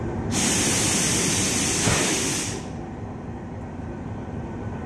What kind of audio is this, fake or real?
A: real